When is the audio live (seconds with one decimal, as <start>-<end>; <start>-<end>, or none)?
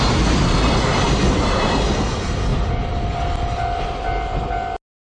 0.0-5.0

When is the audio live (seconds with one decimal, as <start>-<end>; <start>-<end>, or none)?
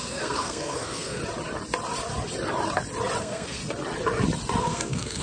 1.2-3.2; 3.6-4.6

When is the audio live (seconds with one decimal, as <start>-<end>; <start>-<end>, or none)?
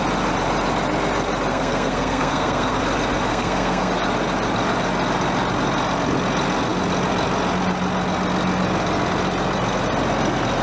0.0-1.5; 2.8-3.3; 3.9-10.6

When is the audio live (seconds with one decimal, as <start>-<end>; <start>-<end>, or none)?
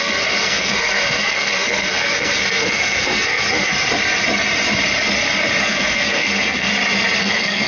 3.7-5.6; 6.7-7.2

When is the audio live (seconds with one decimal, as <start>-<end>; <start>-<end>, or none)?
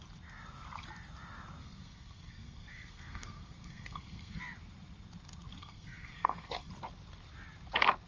0.0-1.6; 4.4-5.6; 6.7-8.1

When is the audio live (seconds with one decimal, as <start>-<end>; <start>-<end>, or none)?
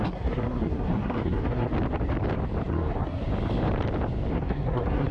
1.7-2.7; 3.2-4.3